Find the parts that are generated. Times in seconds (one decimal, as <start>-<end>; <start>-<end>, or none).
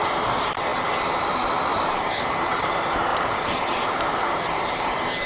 1.7-2.7; 3.1-4.7